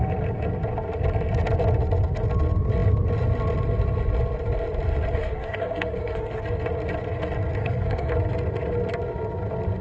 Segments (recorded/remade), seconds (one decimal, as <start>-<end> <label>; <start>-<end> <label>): 0.0-5.2 recorded; 5.2-6.4 remade; 6.4-7.6 recorded; 7.6-8.1 remade; 8.1-9.8 recorded